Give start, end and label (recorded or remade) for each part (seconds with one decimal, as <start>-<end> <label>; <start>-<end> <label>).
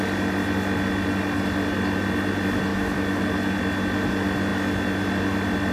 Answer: 0.0-2.7 recorded; 2.7-3.2 remade; 3.2-5.7 recorded